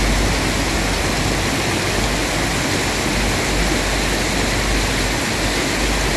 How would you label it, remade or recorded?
recorded